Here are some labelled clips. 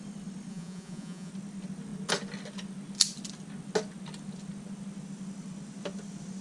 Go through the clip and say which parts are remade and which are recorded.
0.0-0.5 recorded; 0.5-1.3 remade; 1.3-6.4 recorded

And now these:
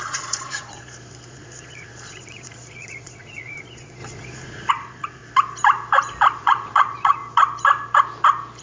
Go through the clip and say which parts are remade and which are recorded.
0.0-5.2 remade; 5.2-6.4 recorded; 6.4-7.2 remade; 7.2-8.6 recorded

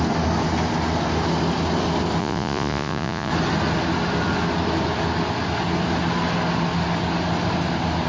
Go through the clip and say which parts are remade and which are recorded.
0.0-2.2 recorded; 2.2-3.3 remade; 3.3-8.1 recorded